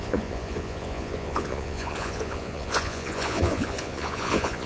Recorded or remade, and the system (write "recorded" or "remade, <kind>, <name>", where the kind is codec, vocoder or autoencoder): remade, vocoder, Vocos